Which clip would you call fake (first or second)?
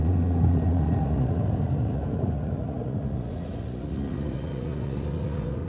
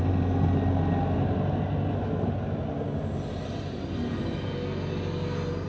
first